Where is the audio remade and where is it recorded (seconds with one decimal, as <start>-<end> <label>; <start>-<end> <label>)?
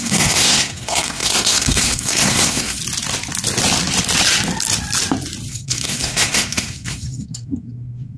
0.0-2.8 remade; 2.8-5.5 recorded; 5.5-8.2 remade